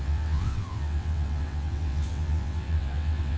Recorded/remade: remade